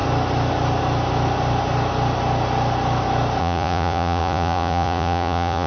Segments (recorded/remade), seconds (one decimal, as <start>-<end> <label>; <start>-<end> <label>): 0.0-3.4 recorded; 3.4-5.7 remade